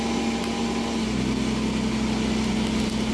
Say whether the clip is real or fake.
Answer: real